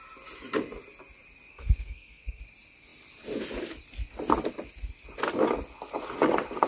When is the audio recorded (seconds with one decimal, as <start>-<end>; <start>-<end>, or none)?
0.0-1.5; 2.4-6.7